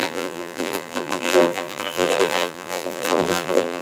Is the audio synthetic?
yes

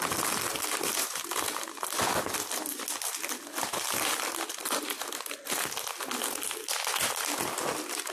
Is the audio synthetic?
no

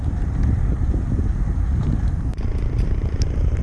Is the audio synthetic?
yes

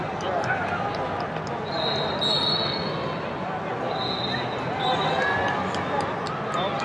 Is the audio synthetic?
no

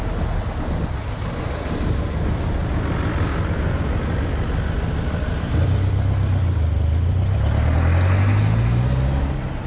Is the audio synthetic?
no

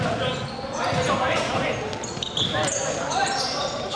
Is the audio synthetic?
no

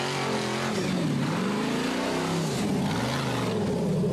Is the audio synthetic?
no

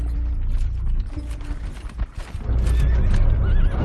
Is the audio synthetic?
no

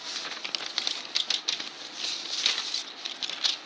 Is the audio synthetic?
no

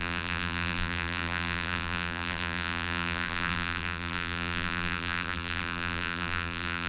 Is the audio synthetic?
yes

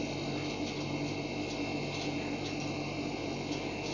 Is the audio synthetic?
no